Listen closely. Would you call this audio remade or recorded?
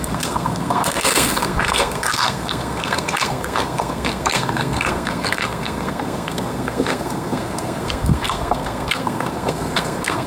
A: remade